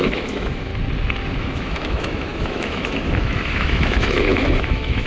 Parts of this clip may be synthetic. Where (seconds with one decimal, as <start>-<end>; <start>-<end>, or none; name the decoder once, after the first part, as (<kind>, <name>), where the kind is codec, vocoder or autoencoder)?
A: 0.0-0.7 (autoencoder, DAC-VAE); 1.4-5.1